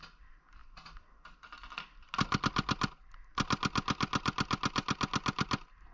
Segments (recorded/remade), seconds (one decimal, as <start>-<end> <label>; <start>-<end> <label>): 0.0-5.9 recorded